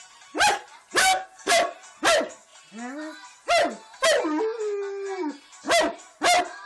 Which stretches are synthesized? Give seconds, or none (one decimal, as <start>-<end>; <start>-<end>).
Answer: 1.0-1.5